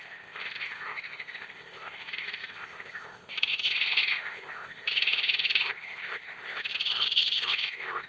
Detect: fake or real fake